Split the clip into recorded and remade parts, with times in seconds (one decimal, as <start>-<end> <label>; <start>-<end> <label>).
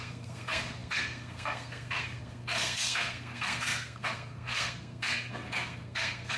0.0-6.4 remade